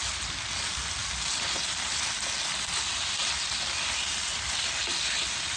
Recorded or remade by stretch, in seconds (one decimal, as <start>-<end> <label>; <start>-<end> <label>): 0.0-5.6 recorded